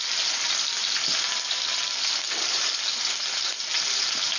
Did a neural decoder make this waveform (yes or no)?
no